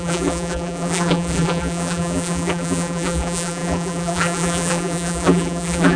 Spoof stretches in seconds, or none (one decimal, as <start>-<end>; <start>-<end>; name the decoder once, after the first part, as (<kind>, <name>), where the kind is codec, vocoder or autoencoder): 0.0-6.0 (vocoder, BigVGAN v2)